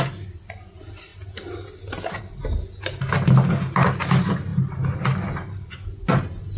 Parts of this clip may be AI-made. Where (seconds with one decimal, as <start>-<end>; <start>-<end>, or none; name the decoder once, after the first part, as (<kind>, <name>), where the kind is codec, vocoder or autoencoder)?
none

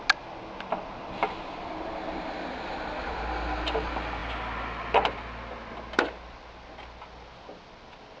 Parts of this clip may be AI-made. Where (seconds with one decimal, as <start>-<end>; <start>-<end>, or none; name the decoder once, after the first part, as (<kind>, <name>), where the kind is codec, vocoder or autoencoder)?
none

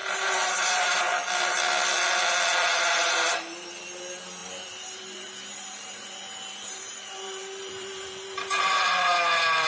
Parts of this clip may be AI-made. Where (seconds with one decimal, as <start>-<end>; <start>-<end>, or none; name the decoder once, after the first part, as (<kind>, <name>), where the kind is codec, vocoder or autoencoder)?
0.0-1.0 (vocoder, BigVGAN v2); 2.7-3.7; 4.4-8.6

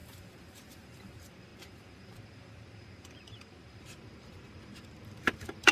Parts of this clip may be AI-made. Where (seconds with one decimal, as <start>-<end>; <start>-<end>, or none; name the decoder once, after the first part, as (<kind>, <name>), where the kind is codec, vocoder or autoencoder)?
0.0-5.7 (vocoder, BigVGAN v2)

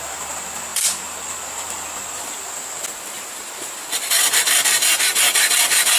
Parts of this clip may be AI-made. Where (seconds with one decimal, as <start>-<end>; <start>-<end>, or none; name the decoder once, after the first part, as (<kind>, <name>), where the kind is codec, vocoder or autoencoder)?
none

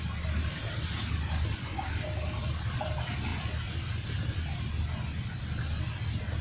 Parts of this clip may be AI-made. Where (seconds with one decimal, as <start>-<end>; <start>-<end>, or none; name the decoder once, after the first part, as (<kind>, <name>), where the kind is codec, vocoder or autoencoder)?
none

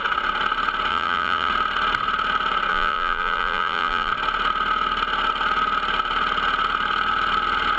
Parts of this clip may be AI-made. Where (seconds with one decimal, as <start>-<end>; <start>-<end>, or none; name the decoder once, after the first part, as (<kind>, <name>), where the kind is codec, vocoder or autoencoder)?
0.9-1.5 (vocoder, BigVGAN v2); 2.7-4.1